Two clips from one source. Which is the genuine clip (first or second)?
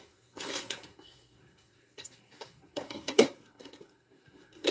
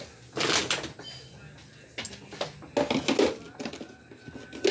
second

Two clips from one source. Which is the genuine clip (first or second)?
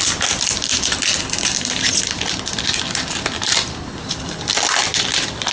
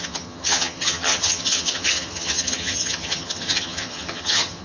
first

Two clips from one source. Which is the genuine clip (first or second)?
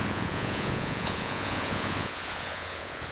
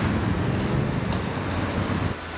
second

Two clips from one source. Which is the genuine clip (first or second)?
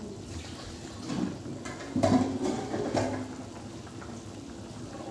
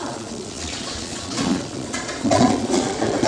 first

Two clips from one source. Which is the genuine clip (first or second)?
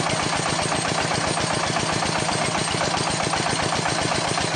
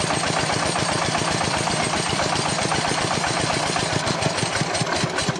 first